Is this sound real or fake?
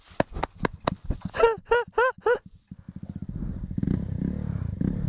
real